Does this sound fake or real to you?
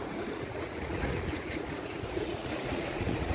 fake